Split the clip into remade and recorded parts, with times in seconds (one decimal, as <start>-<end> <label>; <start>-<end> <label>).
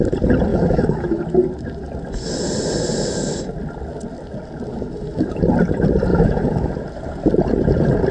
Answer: 0.0-0.5 recorded; 0.5-1.2 remade; 1.2-4.7 recorded; 4.7-5.3 remade; 5.3-6.1 recorded; 6.1-6.7 remade; 6.7-8.1 recorded